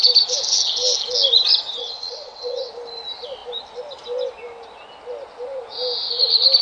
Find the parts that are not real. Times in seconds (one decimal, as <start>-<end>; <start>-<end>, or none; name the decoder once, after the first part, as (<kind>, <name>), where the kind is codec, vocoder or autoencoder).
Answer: 1.8-2.7 (vocoder, WaveNeXt)